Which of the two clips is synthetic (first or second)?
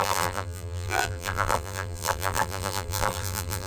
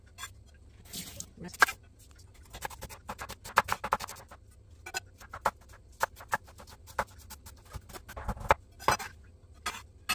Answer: first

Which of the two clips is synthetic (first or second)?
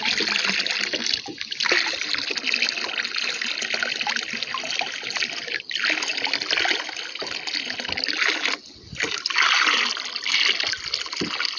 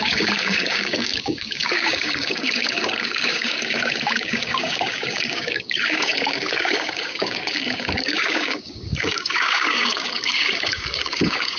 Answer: second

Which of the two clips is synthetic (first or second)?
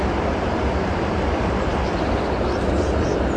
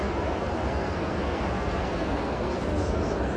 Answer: second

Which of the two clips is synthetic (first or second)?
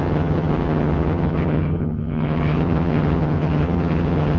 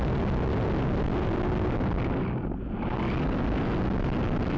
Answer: first